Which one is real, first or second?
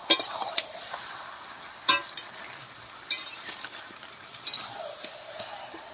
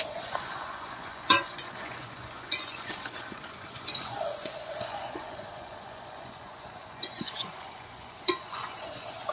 first